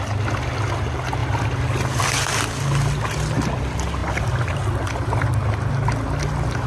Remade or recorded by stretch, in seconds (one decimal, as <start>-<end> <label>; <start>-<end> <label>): 0.0-6.7 recorded